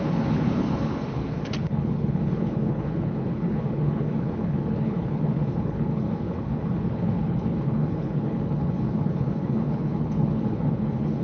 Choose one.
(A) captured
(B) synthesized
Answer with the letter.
B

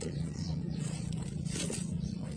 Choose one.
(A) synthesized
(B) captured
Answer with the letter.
A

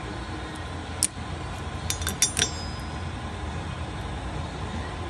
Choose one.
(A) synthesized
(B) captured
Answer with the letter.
B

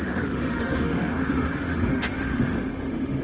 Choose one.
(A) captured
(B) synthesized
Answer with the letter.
B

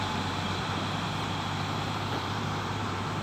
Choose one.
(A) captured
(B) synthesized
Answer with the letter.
B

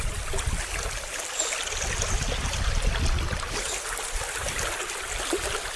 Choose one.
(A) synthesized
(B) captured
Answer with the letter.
B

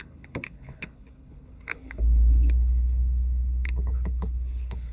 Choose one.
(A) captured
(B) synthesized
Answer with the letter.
B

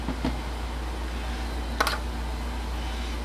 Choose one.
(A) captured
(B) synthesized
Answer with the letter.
A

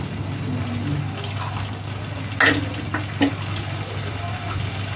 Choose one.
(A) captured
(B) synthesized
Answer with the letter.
A